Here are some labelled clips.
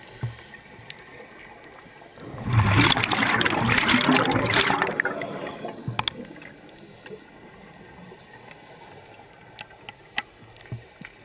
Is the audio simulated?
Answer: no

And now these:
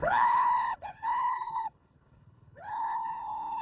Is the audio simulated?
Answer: yes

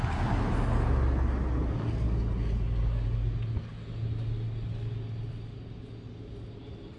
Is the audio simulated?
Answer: no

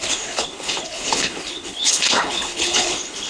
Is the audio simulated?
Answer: yes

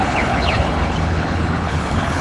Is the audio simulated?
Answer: yes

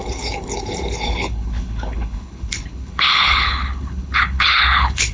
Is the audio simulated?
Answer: yes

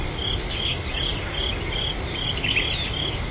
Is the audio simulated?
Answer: no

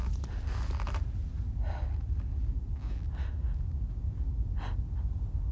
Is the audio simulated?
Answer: no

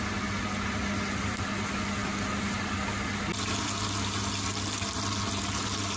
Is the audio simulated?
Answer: no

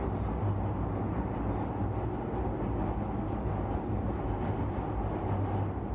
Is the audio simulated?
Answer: no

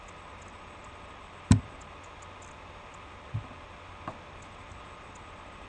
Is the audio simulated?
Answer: no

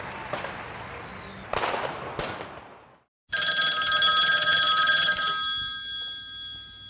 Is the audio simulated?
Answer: no